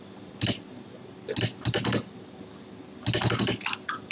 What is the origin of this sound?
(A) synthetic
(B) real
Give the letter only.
B